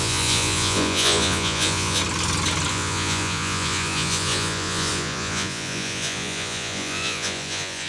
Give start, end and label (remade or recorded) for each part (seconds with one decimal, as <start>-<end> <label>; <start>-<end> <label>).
0.0-2.0 remade; 2.0-2.7 recorded; 2.7-7.9 remade